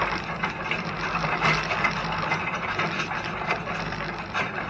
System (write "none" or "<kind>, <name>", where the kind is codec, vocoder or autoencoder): none